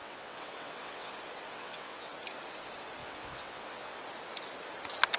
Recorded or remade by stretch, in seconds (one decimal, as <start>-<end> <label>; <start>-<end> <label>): 0.0-1.1 remade; 1.1-1.5 recorded; 1.5-2.1 remade; 2.1-3.0 recorded; 3.0-4.0 remade; 4.0-5.2 recorded